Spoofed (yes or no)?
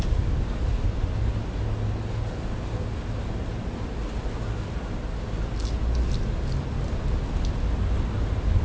no